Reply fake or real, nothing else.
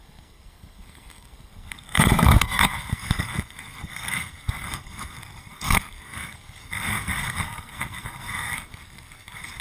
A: fake